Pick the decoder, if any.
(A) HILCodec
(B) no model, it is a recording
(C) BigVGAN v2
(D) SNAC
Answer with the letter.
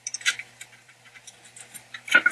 B